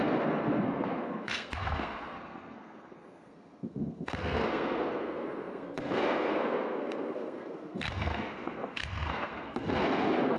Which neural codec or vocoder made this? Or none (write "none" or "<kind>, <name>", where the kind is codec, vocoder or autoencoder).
codec, SNAC